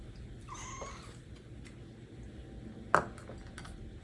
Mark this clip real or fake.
real